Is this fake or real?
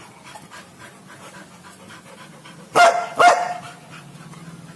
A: real